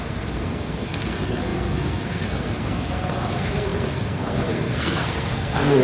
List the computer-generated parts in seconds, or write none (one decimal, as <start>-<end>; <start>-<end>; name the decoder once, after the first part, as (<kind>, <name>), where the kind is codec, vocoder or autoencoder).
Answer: 0.0-5.8 (codec, SNAC)